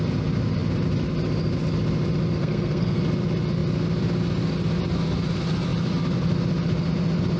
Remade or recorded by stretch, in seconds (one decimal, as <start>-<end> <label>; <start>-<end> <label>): 0.0-2.4 recorded; 2.4-3.0 remade; 3.0-7.4 recorded

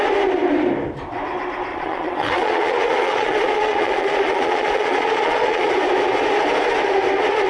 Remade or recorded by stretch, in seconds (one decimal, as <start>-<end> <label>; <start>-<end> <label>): 0.0-1.7 recorded; 1.7-5.7 remade; 5.7-7.5 recorded